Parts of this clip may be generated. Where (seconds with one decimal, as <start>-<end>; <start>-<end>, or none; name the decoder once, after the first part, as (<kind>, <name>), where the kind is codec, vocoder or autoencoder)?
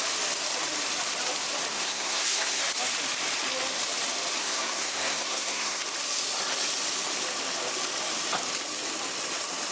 1.7-2.6 (codec, SNAC); 4.4-5.8